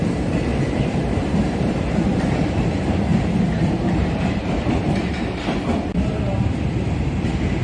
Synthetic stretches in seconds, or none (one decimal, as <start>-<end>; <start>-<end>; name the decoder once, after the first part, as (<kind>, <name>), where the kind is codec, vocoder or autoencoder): 0.0-7.6 (vocoder, BigVGAN v2)